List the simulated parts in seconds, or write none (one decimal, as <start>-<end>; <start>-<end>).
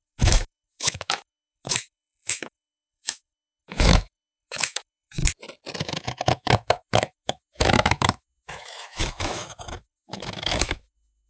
0.0-5.2; 5.8-11.3